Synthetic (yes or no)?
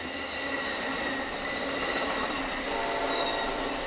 no